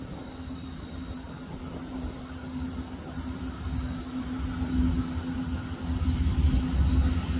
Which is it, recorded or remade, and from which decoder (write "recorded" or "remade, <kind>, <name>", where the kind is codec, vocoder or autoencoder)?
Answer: recorded